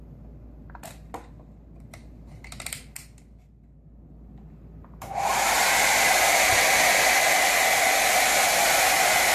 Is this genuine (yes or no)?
yes